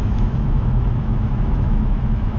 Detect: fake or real fake